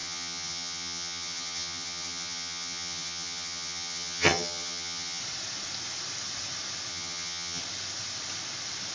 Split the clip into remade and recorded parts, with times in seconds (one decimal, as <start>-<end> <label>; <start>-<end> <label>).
0.0-5.2 remade; 5.2-6.9 recorded; 6.9-7.6 remade; 7.6-8.9 recorded